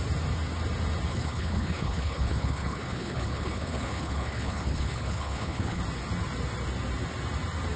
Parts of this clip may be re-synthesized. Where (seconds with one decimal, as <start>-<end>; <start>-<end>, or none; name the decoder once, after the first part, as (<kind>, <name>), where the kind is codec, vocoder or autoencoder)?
1.1-5.8 (codec, HILCodec)